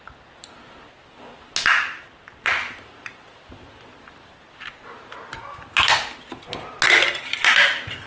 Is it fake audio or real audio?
real